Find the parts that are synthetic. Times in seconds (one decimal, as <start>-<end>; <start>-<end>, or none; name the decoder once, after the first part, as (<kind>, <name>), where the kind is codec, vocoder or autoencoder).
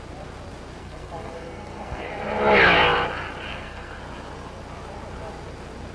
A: 0.8-2.1 (codec, SNAC); 3.5-4.0